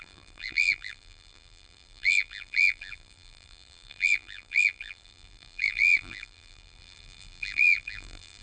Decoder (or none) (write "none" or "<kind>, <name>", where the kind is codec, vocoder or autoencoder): vocoder, BigVGAN v2